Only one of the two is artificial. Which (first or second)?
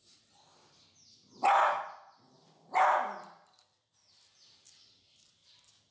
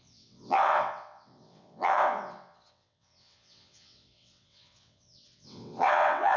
second